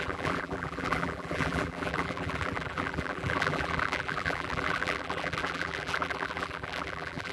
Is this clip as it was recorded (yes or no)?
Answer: no